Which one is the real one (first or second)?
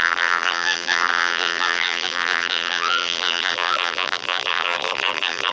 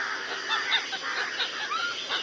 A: second